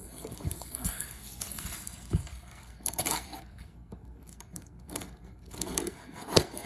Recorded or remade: remade